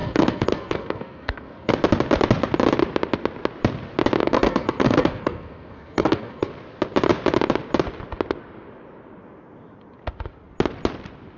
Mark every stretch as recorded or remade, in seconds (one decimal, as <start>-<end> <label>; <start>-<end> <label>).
0.0-1.7 remade; 1.7-4.2 recorded; 4.2-6.5 remade; 6.5-11.4 recorded